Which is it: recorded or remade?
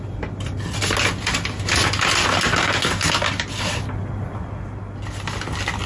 recorded